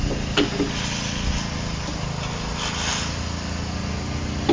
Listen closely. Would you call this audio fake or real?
real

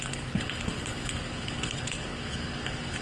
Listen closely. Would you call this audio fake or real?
fake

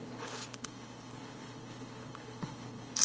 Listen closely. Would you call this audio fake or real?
fake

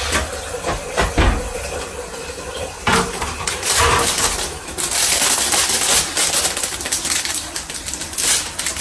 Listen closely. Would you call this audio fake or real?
real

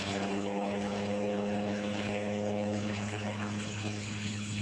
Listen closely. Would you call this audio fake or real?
fake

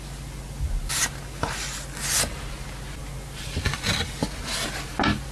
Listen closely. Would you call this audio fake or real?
real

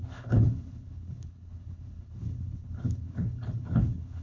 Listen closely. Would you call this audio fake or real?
fake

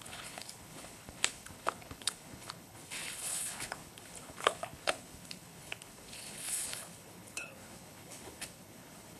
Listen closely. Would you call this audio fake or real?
fake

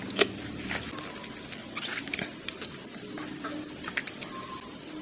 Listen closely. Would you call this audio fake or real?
real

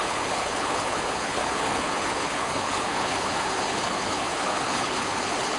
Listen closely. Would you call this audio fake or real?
fake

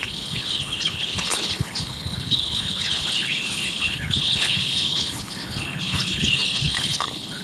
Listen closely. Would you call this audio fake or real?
fake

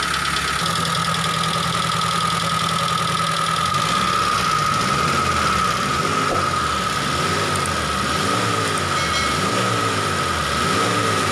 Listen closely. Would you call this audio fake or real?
real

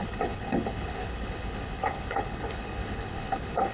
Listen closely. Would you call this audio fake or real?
fake